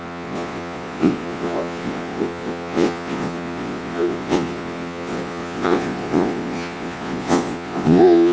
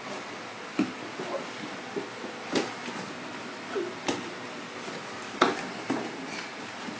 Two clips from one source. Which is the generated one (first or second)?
first